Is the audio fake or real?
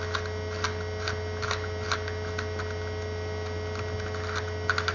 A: real